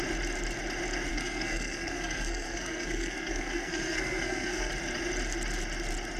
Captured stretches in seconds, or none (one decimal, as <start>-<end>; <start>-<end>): 0.0-1.1; 4.7-6.2